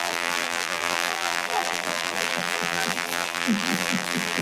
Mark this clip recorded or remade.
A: remade